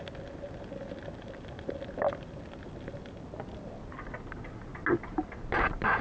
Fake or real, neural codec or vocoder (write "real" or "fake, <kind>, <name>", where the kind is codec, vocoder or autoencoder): real